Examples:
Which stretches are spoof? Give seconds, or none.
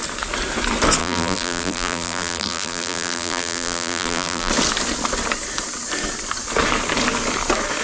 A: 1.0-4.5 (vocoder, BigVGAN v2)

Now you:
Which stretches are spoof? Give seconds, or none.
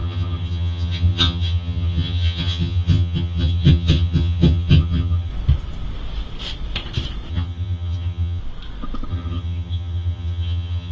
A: 0.0-5.3 (vocoder, HiFi-GAN); 7.3-8.4; 9.1-10.9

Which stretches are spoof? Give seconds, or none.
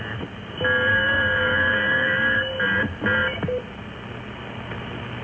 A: 0.9-2.5 (codec, DAC)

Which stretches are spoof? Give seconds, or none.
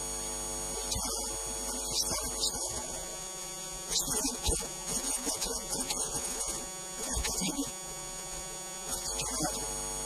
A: 2.5-9.1 (vocoder, Vocos)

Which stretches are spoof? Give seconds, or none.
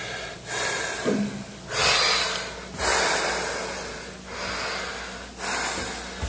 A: none